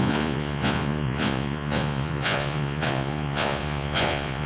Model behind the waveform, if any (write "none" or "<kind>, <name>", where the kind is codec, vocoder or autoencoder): vocoder, Vocos